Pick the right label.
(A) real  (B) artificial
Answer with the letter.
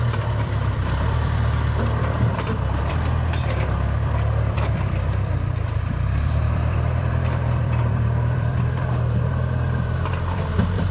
B